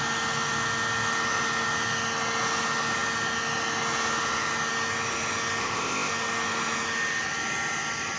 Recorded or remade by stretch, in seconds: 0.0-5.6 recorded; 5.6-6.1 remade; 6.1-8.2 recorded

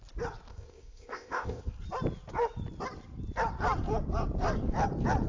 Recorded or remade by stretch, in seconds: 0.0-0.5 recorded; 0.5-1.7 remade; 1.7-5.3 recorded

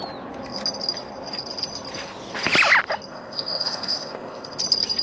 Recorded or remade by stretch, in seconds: 0.0-3.1 recorded; 3.1-4.6 remade; 4.6-5.0 recorded

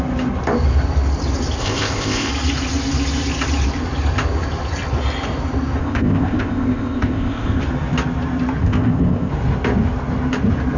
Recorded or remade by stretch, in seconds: 0.0-1.6 recorded; 1.6-2.3 remade; 2.3-5.8 recorded; 5.8-7.6 remade; 7.6-8.6 recorded; 8.6-9.3 remade; 9.3-10.8 recorded

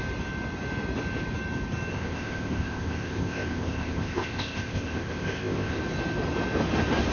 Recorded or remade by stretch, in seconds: 0.0-1.9 recorded; 1.9-5.8 remade; 5.8-7.1 recorded

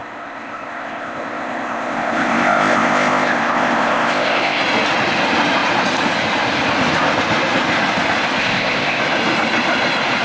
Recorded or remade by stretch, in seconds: 0.0-4.6 remade; 4.6-8.4 recorded; 8.4-9.0 remade; 9.0-10.2 recorded